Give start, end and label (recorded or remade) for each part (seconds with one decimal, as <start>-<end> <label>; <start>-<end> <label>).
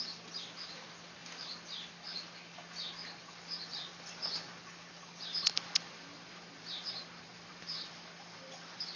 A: 0.0-6.1 recorded; 6.1-7.9 remade; 7.9-9.0 recorded